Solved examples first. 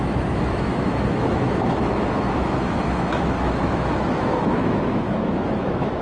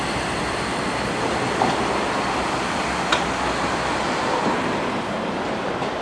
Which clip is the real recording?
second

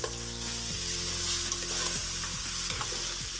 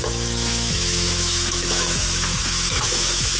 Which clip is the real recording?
first